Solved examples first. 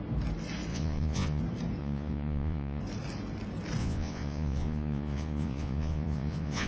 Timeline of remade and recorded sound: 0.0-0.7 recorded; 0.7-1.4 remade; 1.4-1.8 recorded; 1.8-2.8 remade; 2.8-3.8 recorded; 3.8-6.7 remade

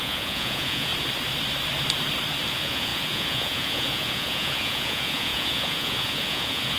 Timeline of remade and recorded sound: 0.0-0.9 remade; 0.9-2.5 recorded; 2.5-6.8 remade

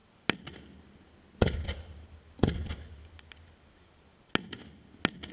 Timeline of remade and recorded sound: 0.0-5.3 recorded

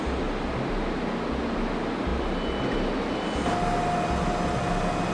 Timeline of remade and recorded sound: 0.0-5.1 recorded

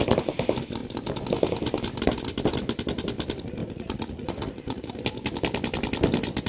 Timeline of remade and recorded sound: 0.0-3.6 recorded; 3.6-4.9 remade; 4.9-6.5 recorded

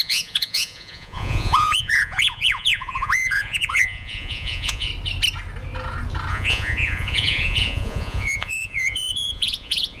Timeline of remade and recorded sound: 0.0-4.9 remade; 4.9-6.3 recorded; 6.3-10.0 remade

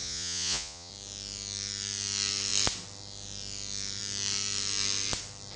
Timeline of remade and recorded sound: 0.0-0.9 remade; 0.9-5.6 recorded

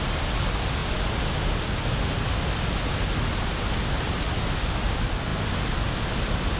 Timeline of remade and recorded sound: 0.0-6.6 recorded